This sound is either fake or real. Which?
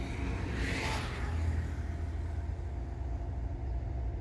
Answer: real